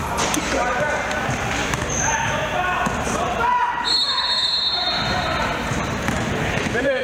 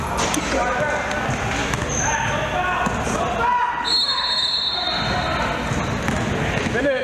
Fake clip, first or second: first